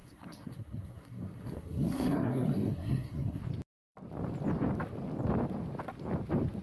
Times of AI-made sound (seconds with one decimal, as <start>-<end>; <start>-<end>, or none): 0.0-3.4